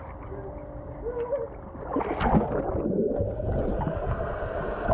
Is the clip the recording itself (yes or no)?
yes